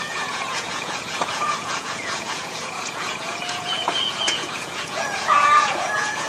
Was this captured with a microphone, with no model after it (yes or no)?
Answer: no